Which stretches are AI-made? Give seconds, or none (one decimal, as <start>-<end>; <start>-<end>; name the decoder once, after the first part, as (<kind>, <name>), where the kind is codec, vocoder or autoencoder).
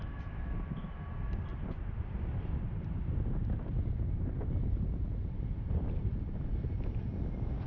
1.5-5.4 (vocoder, BigVGAN v2)